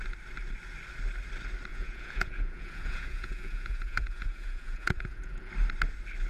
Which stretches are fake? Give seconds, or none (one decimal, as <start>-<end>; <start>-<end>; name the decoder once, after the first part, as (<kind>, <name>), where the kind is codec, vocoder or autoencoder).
1.7-5.5 (vocoder, Vocos)